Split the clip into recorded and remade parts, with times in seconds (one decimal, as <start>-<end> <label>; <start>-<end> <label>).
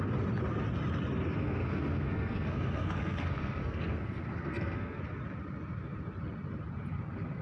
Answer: 0.0-1.4 recorded; 1.4-5.0 remade; 5.0-7.4 recorded